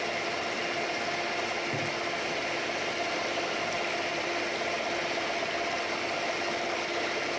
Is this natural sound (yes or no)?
yes